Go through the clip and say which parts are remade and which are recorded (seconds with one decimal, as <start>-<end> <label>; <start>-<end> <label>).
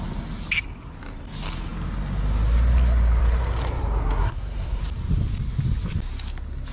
0.0-4.0 recorded; 4.0-4.8 remade; 4.8-6.7 recorded